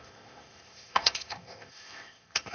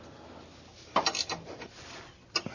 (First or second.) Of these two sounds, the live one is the second